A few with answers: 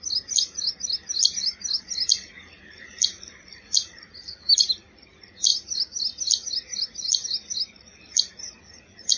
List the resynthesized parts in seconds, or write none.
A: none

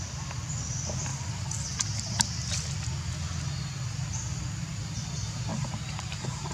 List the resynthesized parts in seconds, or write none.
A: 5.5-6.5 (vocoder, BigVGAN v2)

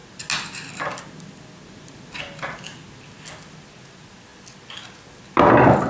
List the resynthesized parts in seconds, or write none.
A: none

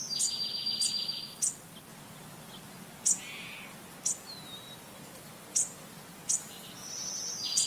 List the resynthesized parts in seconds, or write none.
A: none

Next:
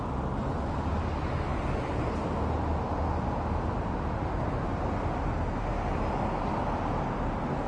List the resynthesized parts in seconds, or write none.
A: none